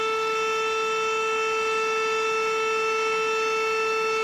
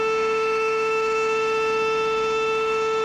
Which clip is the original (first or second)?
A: first